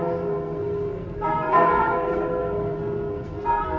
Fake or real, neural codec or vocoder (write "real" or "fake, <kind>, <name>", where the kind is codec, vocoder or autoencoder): fake, codec, SNAC